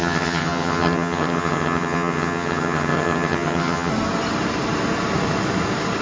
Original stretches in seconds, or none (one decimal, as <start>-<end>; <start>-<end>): 3.9-6.0